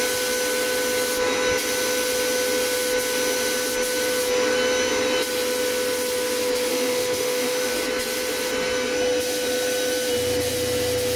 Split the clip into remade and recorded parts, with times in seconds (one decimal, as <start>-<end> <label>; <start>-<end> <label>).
0.0-6.7 recorded; 6.7-7.7 remade; 7.7-11.2 recorded